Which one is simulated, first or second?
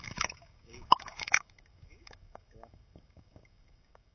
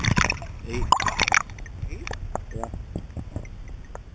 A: first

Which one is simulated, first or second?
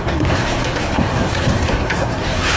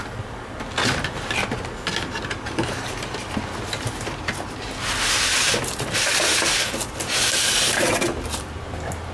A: first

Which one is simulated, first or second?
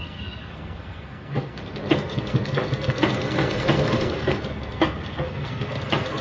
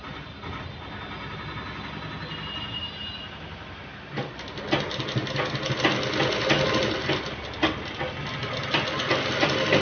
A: first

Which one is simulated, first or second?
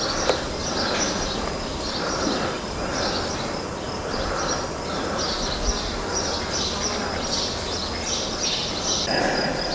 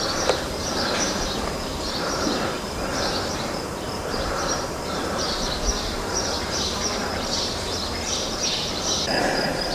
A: second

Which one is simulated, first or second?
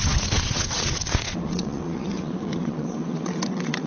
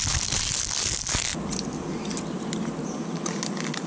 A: first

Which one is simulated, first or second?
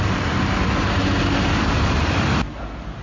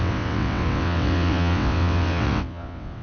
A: second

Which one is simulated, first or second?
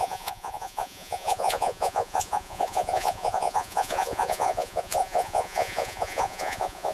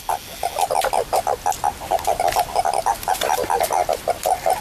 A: first